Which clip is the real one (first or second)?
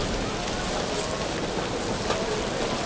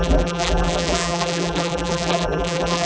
first